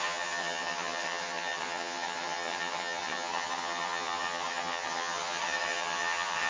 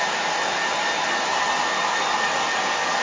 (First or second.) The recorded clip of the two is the second